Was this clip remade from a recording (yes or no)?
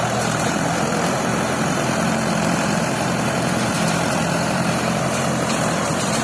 yes